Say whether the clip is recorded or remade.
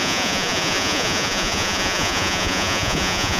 remade